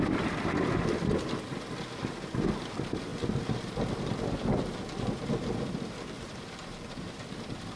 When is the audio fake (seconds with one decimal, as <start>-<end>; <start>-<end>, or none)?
0.0-7.8